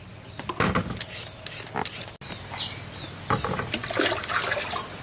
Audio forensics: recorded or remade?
recorded